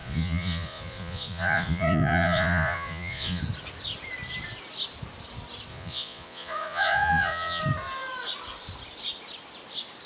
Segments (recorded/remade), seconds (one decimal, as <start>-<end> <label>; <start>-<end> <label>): 0.0-3.4 remade; 3.4-5.7 recorded; 5.7-7.6 remade; 7.6-10.1 recorded